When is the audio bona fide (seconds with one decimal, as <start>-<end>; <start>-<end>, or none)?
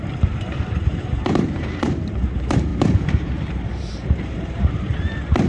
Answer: none